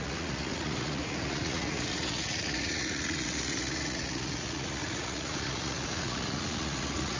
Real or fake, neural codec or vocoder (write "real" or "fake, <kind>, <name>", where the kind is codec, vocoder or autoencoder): fake, vocoder, Vocos